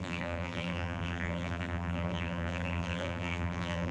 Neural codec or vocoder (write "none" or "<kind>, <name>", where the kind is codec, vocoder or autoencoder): vocoder, BigVGAN v2